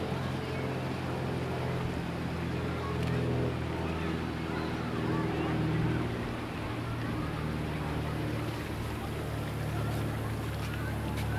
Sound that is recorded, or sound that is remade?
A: recorded